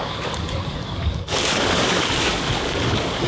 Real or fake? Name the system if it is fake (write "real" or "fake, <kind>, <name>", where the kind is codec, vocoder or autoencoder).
fake, codec, DAC